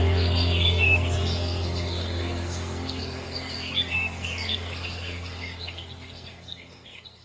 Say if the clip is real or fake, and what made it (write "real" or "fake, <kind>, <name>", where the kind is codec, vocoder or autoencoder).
fake, codec, SNAC